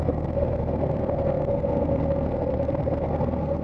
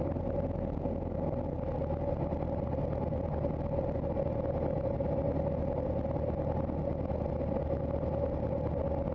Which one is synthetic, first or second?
first